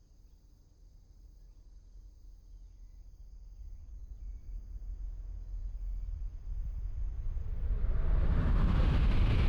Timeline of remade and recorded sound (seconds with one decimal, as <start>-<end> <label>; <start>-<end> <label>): 0.0-5.6 recorded; 5.6-8.7 remade; 8.7-9.5 recorded